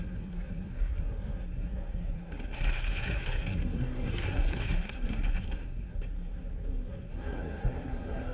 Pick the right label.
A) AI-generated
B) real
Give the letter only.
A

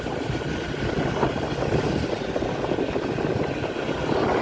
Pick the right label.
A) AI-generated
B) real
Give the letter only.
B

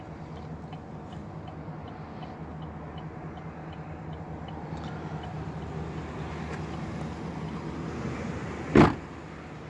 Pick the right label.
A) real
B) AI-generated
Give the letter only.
A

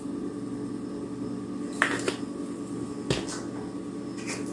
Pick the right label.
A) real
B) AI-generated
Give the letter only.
A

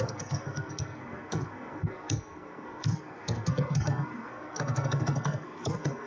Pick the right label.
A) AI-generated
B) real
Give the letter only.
A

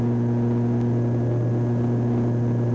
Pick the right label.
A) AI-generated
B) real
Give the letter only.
B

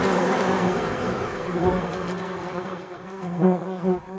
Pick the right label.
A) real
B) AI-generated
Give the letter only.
B